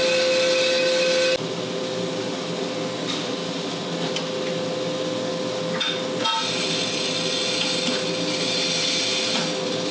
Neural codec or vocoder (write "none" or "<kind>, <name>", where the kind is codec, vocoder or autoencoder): none